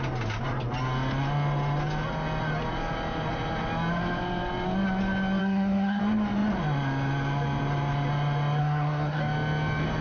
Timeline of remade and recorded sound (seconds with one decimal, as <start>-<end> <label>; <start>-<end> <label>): 0.0-5.4 recorded; 5.4-6.0 remade; 6.0-8.6 recorded; 8.6-9.2 remade; 9.2-10.0 recorded